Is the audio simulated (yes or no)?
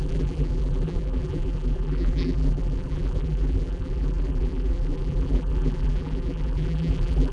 yes